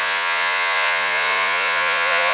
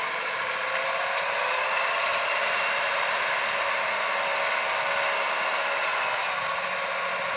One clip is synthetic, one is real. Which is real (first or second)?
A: second